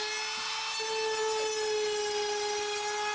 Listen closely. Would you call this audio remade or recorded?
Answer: recorded